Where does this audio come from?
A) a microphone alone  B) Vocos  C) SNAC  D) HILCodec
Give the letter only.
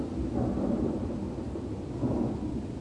A